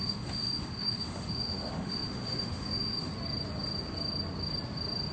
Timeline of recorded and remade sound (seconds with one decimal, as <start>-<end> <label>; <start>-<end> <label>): 0.0-3.1 remade; 3.1-5.1 recorded